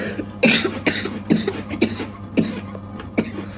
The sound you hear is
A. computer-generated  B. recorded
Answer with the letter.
B